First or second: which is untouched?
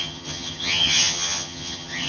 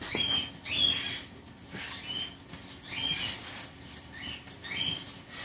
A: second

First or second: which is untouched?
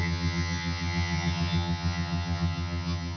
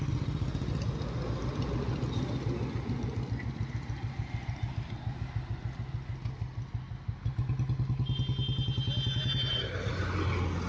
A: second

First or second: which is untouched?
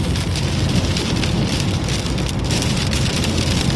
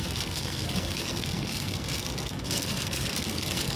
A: first